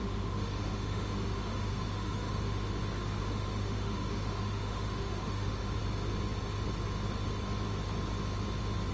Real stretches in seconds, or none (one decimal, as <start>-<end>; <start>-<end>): 2.6-3.2; 5.8-8.9